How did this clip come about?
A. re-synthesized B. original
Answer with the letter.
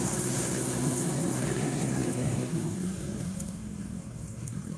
A